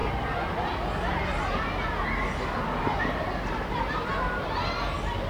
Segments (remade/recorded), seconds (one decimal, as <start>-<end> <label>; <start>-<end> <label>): 0.0-2.8 recorded; 2.8-4.1 remade; 4.1-5.3 recorded